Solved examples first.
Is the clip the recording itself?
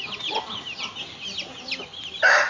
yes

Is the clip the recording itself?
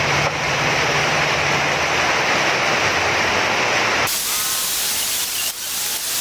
yes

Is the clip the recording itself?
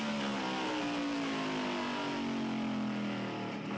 yes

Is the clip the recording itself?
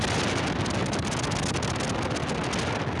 yes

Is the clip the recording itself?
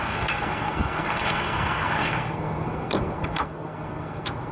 no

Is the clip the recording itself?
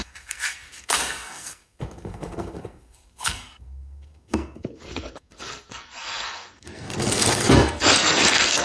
no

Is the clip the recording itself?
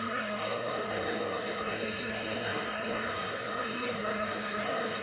no